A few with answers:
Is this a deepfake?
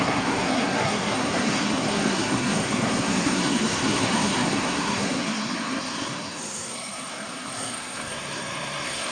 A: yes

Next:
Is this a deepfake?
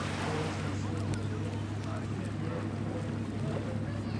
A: no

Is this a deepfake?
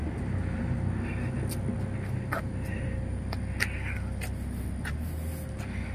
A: no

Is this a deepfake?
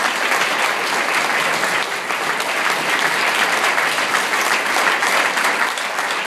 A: no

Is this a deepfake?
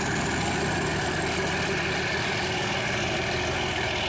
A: no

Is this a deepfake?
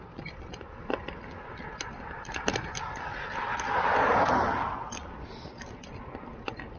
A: no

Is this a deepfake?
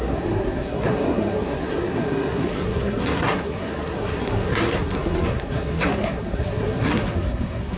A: yes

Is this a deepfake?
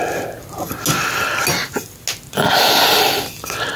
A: no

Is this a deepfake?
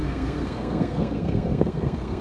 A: yes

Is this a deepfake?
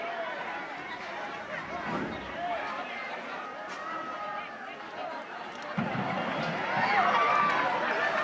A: no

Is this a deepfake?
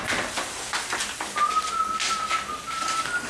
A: no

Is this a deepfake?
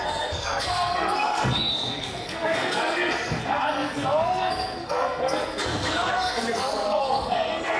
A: yes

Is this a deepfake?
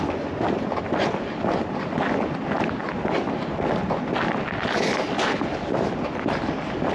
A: no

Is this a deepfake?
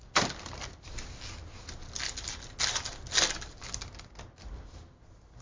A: no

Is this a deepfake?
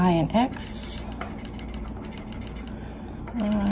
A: no